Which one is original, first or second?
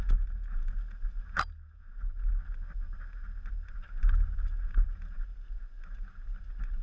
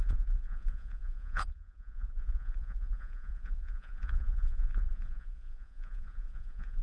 first